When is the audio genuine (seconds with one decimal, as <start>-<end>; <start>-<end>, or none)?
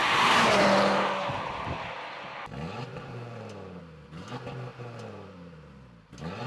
1.4-2.9; 3.8-4.7; 6.1-6.5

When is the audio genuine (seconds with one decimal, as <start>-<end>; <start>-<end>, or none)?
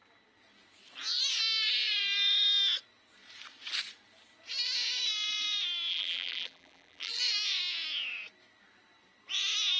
0.0-5.9; 7.2-9.8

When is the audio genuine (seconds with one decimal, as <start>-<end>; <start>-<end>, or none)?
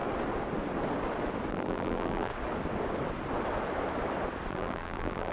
0.0-1.5; 2.3-4.5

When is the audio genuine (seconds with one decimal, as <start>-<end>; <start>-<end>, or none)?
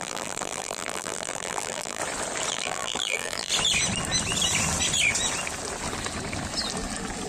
2.0-2.5; 3.5-7.3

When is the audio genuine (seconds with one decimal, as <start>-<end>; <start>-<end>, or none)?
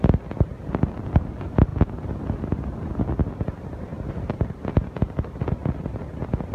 0.0-1.7; 2.9-3.9; 4.7-6.5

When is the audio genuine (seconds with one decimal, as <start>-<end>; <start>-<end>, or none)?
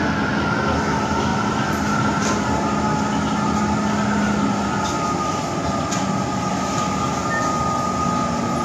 0.0-1.3; 6.5-8.6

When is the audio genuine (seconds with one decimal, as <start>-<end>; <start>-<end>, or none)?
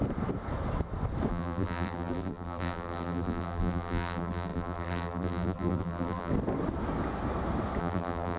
0.0-1.3; 6.3-7.8